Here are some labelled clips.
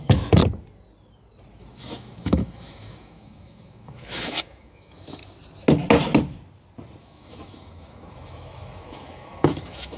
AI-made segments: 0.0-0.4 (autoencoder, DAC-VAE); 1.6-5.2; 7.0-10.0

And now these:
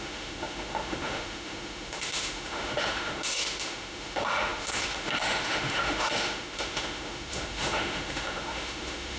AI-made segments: 0.0-9.2 (autoencoder, DAC-VAE)